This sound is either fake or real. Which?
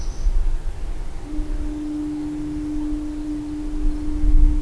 real